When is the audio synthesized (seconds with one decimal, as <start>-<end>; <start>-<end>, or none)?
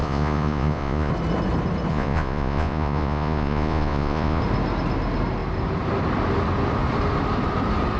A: 0.0-1.1; 1.9-4.4